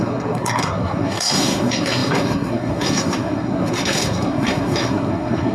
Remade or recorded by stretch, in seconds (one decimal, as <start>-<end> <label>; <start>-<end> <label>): 0.0-5.5 remade